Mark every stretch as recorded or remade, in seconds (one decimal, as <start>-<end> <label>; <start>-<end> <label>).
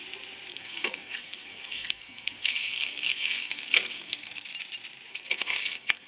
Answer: 0.0-0.5 recorded; 0.5-4.5 remade; 4.5-5.1 recorded; 5.1-6.1 remade